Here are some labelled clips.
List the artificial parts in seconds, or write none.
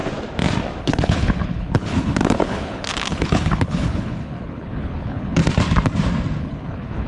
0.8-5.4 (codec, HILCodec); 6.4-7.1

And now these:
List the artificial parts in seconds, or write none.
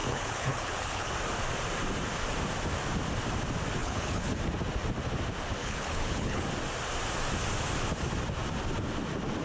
0.0-1.1 (codec, HILCodec); 3.8-4.4; 5.6-6.4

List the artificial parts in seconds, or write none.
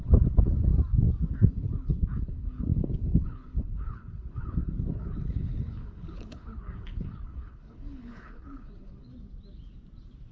0.0-0.7 (codec, HILCodec); 1.3-9.1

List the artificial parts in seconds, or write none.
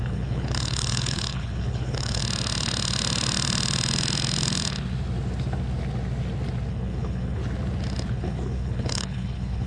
0.0-2.2 (codec, HILCodec); 6.7-7.4; 8.1-9.7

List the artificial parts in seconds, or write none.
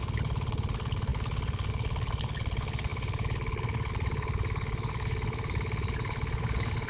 0.0-6.9 (codec, HILCodec)